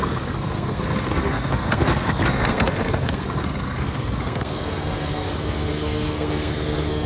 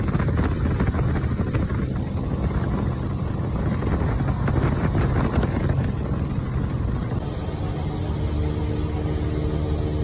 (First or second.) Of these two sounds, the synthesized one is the first